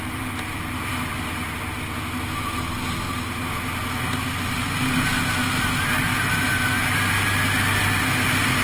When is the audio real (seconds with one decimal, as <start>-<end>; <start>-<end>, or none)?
0.0-8.6